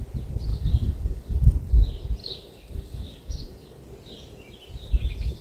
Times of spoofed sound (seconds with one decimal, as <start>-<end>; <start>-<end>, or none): 0.5-1.5; 2.2-3.8